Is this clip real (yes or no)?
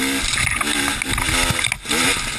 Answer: yes